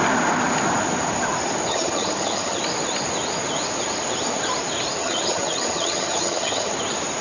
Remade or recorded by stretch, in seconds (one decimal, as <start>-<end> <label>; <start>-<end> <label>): 0.0-1.7 recorded; 1.7-2.6 remade; 2.6-5.0 recorded; 5.0-6.7 remade; 6.7-7.2 recorded